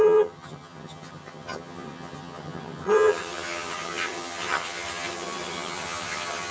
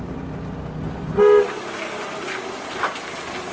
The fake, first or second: first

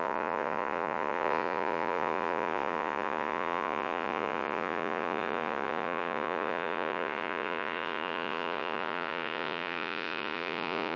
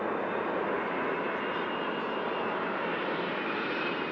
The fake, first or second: first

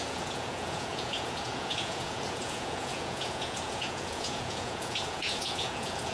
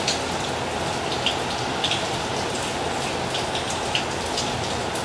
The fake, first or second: first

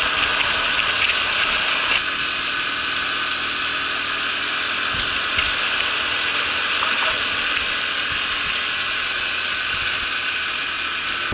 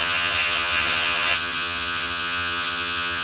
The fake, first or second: second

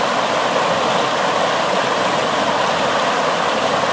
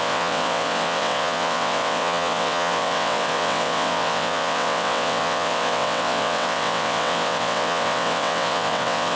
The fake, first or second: second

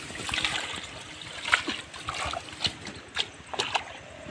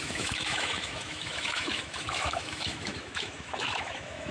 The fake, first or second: second